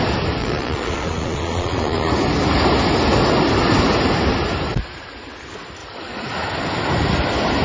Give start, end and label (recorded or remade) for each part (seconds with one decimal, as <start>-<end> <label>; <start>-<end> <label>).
0.0-0.4 recorded; 0.4-2.1 remade; 2.1-7.6 recorded